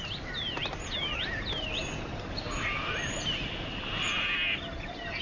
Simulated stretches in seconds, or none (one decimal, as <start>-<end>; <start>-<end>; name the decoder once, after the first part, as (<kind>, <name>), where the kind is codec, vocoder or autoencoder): none